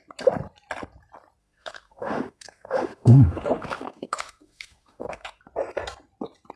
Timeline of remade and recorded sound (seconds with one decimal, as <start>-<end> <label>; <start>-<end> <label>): 0.0-1.4 recorded; 1.4-5.4 remade; 5.4-6.6 recorded